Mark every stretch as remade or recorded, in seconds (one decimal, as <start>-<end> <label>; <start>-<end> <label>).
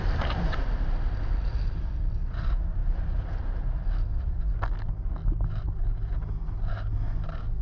0.0-7.6 recorded